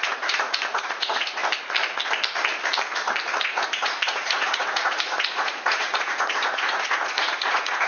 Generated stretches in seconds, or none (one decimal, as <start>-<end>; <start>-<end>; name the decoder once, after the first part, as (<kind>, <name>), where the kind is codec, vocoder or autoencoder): 0.0-1.4 (vocoder, Vocos); 3.4-7.9